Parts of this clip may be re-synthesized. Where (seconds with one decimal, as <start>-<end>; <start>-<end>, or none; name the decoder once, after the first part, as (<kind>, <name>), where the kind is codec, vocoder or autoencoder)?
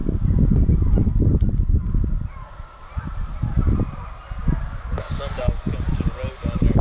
none